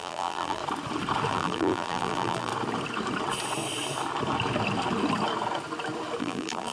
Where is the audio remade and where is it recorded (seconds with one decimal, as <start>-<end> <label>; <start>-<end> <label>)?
0.0-0.6 remade; 0.6-1.3 recorded; 1.3-2.5 remade; 2.5-6.2 recorded; 6.2-6.7 remade